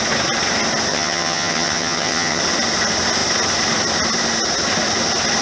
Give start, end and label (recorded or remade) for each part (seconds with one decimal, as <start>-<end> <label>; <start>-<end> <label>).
0.0-0.9 recorded; 0.9-2.4 remade; 2.4-5.4 recorded